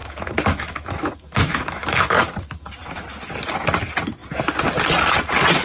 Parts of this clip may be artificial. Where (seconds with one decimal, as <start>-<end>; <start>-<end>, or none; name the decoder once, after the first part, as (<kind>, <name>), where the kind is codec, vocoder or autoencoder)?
0.0-2.2 (autoencoder, DAC-VAE)